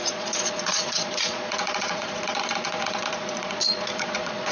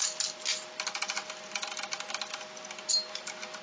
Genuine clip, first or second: second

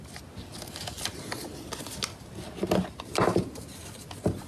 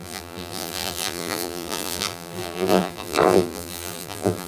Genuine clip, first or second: first